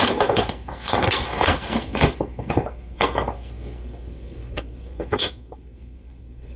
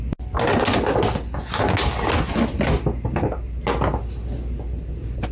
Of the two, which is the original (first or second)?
second